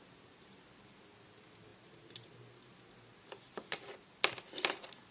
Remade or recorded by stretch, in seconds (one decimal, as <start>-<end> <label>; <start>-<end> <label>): 0.0-5.1 recorded